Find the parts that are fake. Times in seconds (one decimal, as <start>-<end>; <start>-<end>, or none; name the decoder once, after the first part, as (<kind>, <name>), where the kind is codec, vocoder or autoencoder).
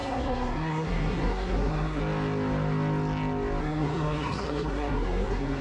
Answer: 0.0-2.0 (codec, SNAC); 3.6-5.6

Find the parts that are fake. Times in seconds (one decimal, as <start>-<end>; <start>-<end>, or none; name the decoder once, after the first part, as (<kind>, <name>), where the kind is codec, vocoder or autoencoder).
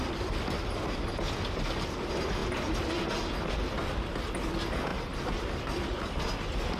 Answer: none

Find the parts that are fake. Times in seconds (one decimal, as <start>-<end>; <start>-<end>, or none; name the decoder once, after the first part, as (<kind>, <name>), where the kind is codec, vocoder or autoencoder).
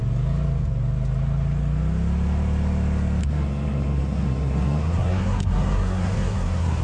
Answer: 3.2-6.8 (codec, SNAC)